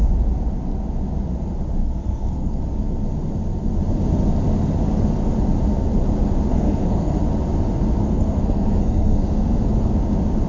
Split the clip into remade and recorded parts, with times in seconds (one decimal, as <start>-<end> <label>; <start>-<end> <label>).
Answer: 0.0-1.8 recorded; 1.8-2.6 remade; 2.6-6.5 recorded; 6.5-7.2 remade; 7.2-8.0 recorded; 8.0-9.9 remade; 9.9-10.5 recorded

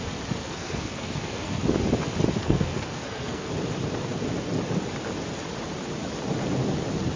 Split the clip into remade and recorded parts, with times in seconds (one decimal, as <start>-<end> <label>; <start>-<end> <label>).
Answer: 0.0-0.4 recorded; 0.4-1.6 remade; 1.6-2.4 recorded; 2.4-3.5 remade; 3.5-7.2 recorded

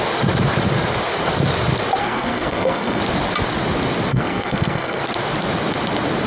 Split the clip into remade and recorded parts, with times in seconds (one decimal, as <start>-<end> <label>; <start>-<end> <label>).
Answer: 0.0-2.0 recorded; 2.0-3.0 remade; 3.0-4.1 recorded; 4.1-5.0 remade; 5.0-6.3 recorded

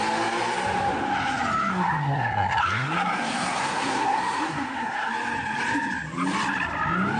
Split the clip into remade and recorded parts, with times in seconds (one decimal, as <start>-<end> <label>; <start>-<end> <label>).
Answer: 0.0-1.7 recorded; 1.7-5.1 remade; 5.1-7.2 recorded

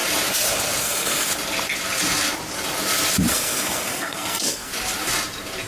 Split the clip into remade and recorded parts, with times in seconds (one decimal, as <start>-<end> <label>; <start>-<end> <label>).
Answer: 0.0-0.8 recorded; 0.8-1.3 remade; 1.3-3.3 recorded; 3.3-4.7 remade; 4.7-5.7 recorded

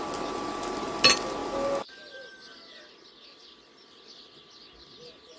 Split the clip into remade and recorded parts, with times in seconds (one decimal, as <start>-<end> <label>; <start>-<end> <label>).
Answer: 0.0-5.4 recorded

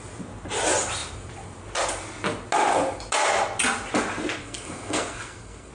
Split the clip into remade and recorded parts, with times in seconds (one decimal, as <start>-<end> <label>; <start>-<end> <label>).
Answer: 0.0-4.4 recorded; 4.4-5.7 remade

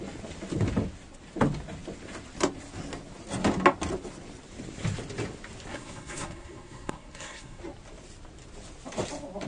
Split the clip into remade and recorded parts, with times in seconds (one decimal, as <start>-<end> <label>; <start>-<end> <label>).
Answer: 0.0-5.7 recorded; 5.7-7.6 remade; 7.6-9.5 recorded